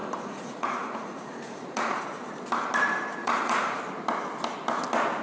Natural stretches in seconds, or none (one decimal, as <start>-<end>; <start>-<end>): 2.0-3.2; 3.8-5.2